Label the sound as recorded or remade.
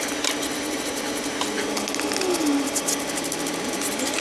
recorded